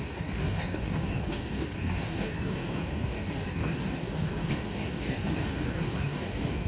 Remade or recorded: remade